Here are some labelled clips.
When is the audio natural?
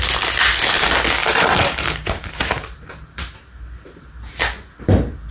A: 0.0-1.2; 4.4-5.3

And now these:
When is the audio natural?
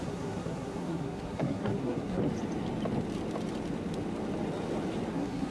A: 2.2-5.1